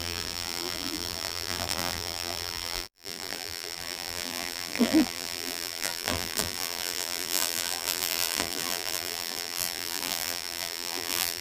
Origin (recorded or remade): remade